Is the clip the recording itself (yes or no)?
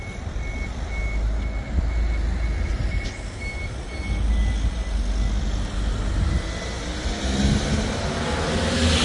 yes